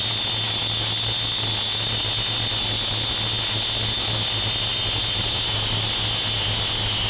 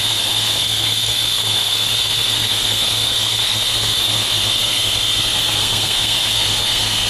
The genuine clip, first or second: first